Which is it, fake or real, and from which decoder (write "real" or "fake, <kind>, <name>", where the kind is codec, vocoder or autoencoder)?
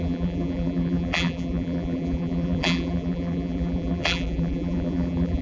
fake, vocoder, BigVGAN v2